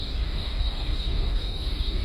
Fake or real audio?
fake